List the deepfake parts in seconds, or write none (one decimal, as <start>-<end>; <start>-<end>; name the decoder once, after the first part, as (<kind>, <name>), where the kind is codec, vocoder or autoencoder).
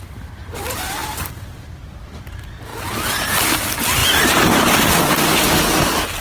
none